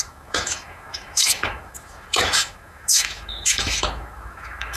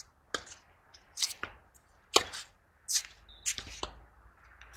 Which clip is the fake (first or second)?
first